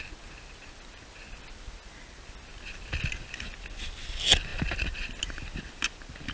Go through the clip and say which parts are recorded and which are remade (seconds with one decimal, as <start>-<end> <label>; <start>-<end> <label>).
0.0-6.3 recorded